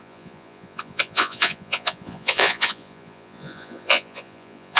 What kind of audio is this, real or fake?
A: fake